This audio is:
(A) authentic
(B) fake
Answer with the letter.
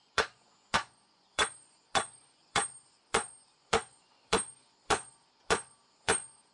B